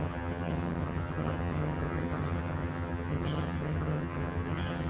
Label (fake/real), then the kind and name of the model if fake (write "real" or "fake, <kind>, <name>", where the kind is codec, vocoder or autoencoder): fake, vocoder, HiFi-GAN